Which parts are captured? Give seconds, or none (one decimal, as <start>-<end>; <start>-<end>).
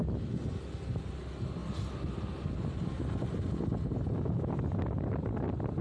0.0-5.8